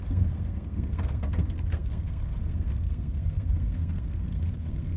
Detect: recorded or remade remade